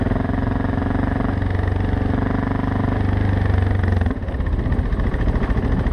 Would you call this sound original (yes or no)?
yes